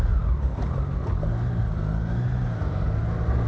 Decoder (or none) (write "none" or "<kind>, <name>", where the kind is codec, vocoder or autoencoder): none